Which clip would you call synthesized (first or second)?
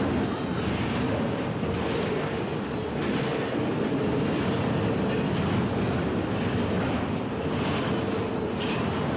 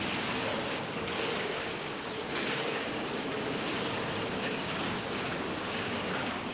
second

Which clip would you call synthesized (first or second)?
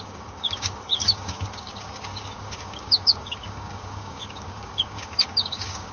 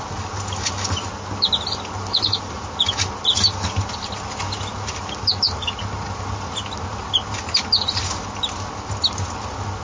first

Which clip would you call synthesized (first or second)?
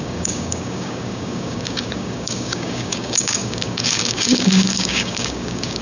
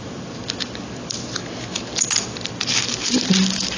first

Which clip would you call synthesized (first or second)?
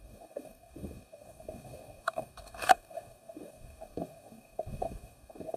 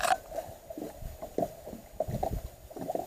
first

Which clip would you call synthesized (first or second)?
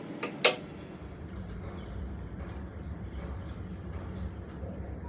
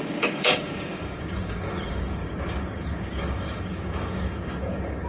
second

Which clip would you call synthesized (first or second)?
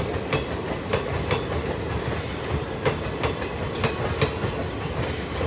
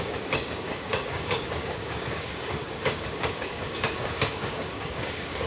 second